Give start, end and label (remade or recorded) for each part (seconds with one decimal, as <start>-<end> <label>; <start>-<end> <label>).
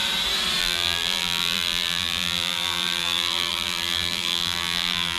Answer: 0.0-0.6 recorded; 0.6-5.2 remade